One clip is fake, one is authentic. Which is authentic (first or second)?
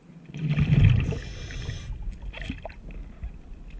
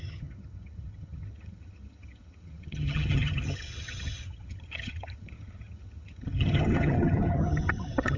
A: first